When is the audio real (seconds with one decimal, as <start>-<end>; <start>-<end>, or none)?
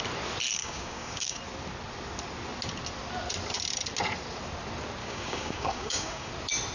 0.0-0.6; 1.4-5.0; 6.3-6.7